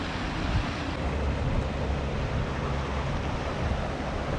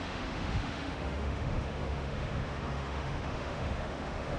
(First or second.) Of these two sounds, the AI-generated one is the second